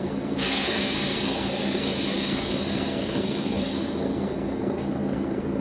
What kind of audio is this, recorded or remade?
remade